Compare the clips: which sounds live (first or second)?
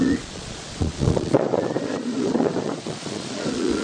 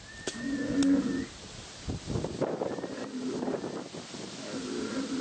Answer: second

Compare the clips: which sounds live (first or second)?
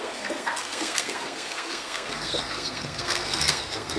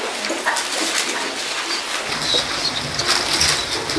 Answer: second